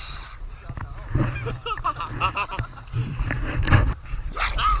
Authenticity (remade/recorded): recorded